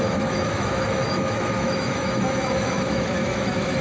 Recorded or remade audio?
remade